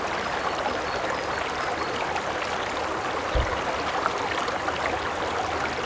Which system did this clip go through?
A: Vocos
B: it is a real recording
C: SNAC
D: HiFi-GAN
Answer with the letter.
B